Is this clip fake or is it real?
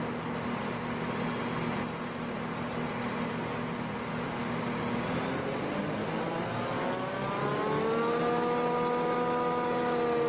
real